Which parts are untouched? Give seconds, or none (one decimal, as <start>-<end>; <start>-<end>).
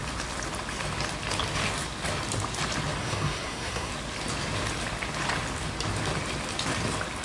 0.0-3.0; 3.9-7.2